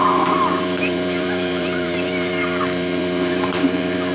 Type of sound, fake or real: fake